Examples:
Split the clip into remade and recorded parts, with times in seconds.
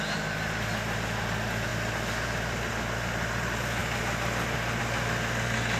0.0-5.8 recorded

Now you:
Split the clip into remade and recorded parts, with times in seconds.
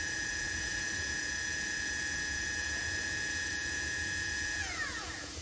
0.0-5.4 remade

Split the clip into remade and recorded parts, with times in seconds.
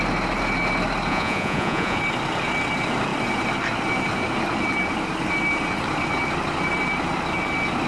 0.0-1.1 recorded; 1.1-2.0 remade; 2.0-7.9 recorded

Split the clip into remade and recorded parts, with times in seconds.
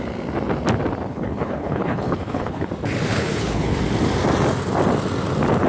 0.0-1.1 recorded; 1.1-2.7 remade; 2.7-3.1 recorded; 3.1-3.8 remade; 3.8-5.7 recorded